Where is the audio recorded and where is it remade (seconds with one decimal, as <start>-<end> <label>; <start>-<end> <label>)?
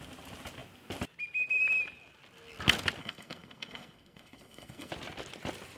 0.0-3.0 recorded; 3.0-4.9 remade; 4.9-5.8 recorded